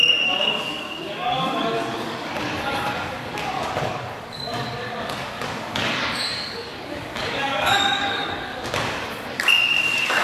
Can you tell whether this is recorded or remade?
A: remade